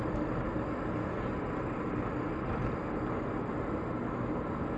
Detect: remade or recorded recorded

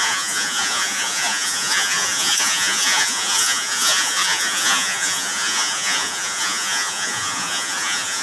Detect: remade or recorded remade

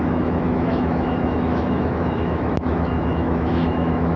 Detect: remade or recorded remade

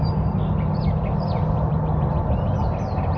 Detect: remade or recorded recorded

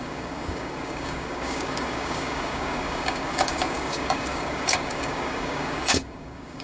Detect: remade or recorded remade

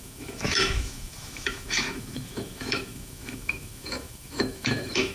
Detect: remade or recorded remade